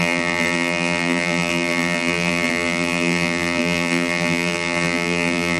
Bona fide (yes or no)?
no